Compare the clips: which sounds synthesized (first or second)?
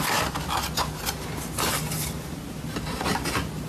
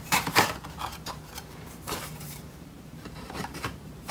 second